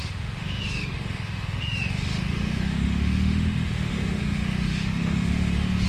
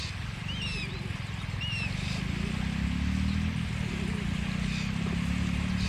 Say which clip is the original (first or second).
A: second